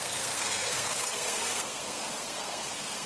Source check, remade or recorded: remade